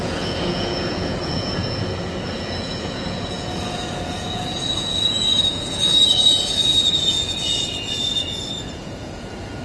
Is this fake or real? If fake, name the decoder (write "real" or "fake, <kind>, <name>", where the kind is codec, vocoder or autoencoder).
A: fake, vocoder, Vocos